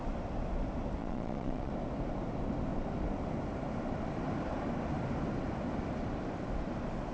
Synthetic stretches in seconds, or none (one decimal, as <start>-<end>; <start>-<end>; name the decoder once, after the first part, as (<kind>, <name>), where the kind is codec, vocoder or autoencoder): 1.0-1.7 (vocoder, Vocos)